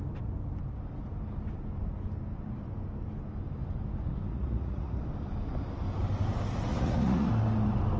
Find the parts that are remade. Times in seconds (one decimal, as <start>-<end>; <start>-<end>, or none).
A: 4.3-5.0; 6.7-7.3